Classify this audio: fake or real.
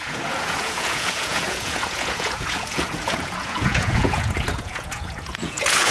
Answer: fake